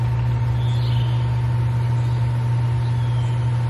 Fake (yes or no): no